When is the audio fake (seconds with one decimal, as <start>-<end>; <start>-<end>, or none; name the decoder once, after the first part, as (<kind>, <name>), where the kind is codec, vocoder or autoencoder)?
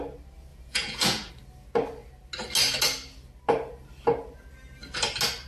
0.5-1.3 (vocoder, Vocos)